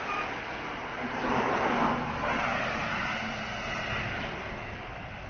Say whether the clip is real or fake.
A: real